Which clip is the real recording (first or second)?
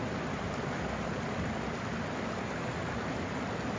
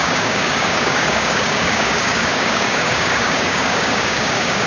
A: first